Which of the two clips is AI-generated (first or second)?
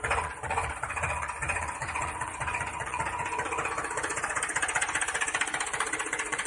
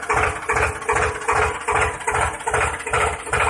first